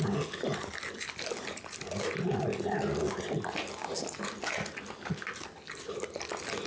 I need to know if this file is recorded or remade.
recorded